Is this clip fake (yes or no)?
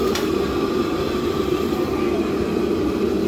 no